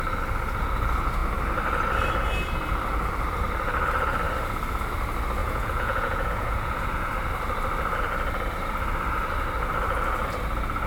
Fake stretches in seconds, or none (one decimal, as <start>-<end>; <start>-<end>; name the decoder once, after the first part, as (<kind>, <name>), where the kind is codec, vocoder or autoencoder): 5.4-7.1 (vocoder, Vocos)